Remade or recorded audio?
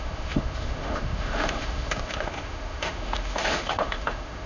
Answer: remade